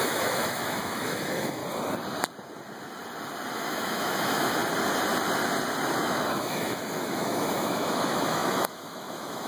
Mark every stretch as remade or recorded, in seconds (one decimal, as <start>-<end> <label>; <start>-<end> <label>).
0.0-1.6 remade; 1.6-3.5 recorded; 3.5-4.6 remade; 4.6-6.0 recorded; 6.0-9.5 remade